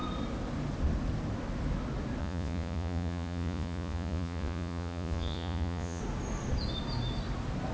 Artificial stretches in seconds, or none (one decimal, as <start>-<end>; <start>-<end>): 2.2-6.0